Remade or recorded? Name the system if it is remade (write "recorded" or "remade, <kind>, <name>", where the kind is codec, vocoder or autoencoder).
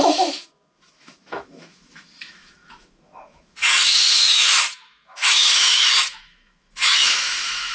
remade, autoencoder, DAC-VAE